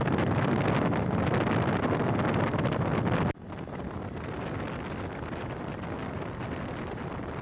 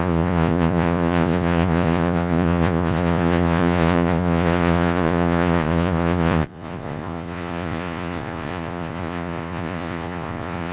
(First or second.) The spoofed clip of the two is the second